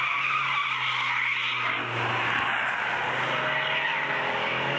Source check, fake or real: real